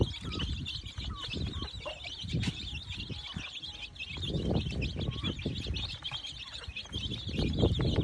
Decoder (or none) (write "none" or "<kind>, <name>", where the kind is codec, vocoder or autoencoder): none